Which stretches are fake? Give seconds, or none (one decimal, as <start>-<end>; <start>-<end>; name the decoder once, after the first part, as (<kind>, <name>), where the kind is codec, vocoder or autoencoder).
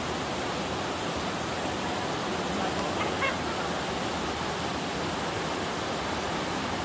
2.3-3.3 (vocoder, BigVGAN v2); 4.7-5.7